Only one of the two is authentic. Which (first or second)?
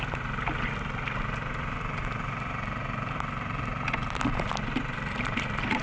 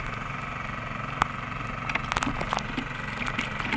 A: second